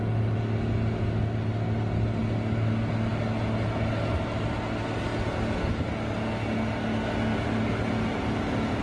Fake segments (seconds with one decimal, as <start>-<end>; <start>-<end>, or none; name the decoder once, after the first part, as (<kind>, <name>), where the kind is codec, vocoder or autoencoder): none